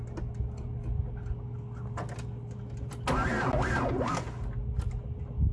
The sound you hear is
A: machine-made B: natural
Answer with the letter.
B